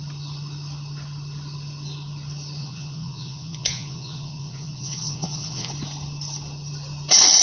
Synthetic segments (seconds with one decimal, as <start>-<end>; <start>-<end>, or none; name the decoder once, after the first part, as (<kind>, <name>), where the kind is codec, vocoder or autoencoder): 2.6-5.7 (vocoder, Vocos)